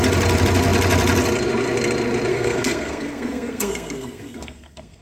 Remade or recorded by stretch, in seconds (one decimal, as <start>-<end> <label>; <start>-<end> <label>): 0.0-2.3 recorded; 2.3-5.0 remade